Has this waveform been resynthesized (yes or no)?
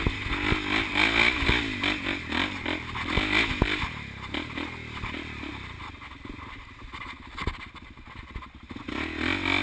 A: no